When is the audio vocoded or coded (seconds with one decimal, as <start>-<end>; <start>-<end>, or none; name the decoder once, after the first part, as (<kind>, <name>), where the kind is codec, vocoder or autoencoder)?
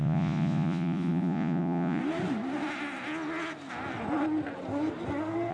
0.0-2.0 (vocoder, Vocos)